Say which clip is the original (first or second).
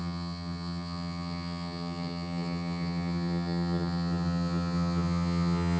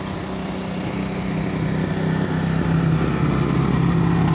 second